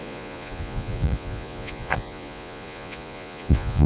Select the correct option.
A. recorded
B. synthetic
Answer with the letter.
B